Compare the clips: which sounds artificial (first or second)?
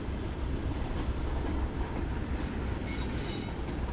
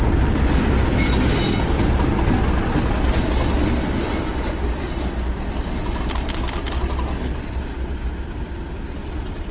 first